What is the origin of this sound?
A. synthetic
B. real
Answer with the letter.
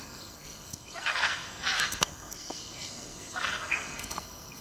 A